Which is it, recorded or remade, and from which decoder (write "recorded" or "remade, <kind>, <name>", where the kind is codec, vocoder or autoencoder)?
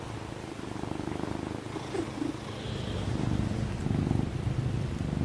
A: recorded